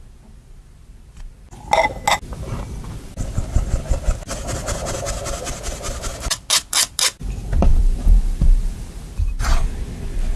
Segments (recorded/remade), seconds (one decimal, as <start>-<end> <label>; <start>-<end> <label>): 0.0-7.7 recorded; 7.7-9.6 remade; 9.6-10.4 recorded